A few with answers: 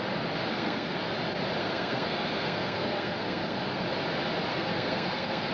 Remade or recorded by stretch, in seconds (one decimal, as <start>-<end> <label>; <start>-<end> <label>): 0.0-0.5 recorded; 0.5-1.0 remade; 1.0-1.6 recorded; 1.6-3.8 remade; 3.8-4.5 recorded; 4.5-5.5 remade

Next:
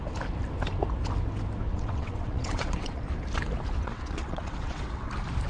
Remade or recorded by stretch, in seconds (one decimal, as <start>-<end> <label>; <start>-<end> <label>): 0.0-1.7 recorded; 1.7-3.0 remade; 3.0-3.8 recorded; 3.8-5.1 remade; 5.1-5.5 recorded

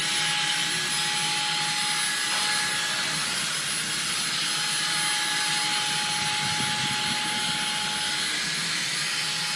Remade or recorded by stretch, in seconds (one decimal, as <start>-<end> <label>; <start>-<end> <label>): 0.0-9.6 recorded

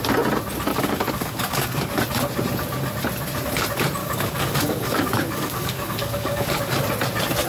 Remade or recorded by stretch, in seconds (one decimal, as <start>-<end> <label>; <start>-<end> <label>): 0.0-0.7 recorded; 0.7-2.0 remade; 2.0-4.0 recorded; 4.0-6.9 remade; 6.9-7.5 recorded

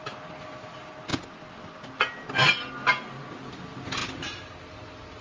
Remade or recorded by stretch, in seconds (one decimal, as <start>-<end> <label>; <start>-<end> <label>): 0.0-5.2 recorded